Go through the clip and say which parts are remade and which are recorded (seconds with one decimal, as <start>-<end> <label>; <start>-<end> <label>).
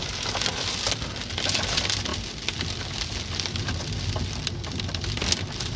0.0-5.8 recorded